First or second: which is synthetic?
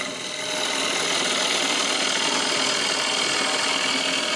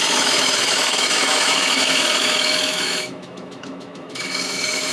second